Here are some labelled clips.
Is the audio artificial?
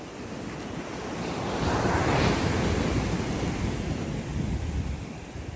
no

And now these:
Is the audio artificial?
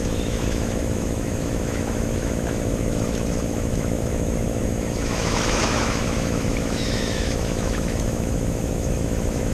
yes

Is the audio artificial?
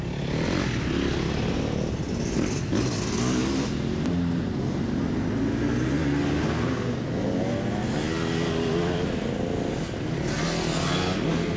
no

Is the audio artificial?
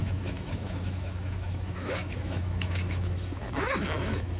yes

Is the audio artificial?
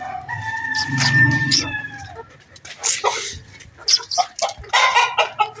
no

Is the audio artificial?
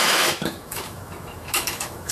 yes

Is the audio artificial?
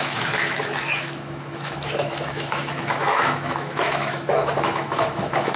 yes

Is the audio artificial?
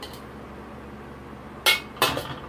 no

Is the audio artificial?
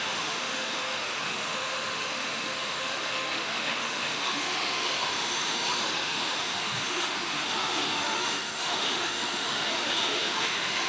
yes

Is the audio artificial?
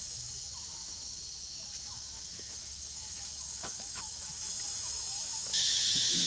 yes